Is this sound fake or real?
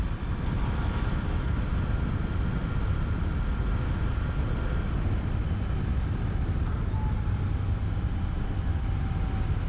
real